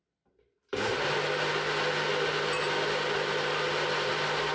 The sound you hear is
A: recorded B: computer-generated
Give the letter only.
A